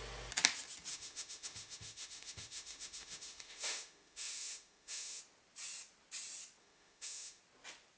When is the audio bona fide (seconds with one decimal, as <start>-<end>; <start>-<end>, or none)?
0.0-0.9; 5.2-6.6; 7.4-8.0